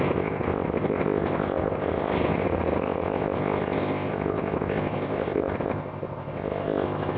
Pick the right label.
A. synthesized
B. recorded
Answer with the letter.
A